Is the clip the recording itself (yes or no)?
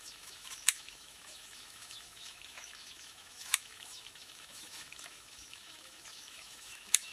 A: no